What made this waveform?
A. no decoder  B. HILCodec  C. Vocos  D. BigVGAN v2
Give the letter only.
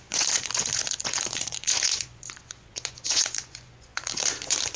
C